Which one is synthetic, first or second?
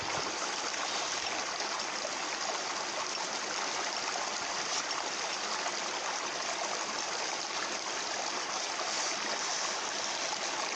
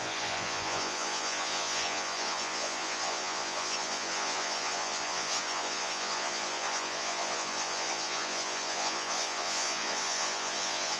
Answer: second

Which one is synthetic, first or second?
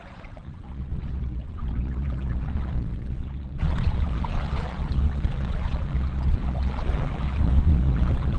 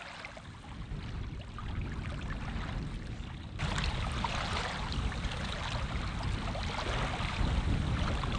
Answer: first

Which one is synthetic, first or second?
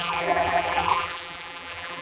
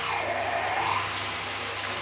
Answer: first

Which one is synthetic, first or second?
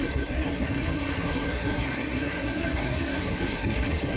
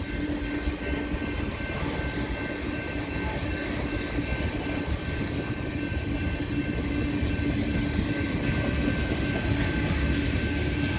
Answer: first